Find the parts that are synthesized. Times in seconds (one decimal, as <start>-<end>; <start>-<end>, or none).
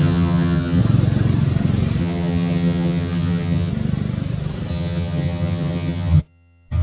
0.0-0.8; 2.0-3.7; 4.7-6.8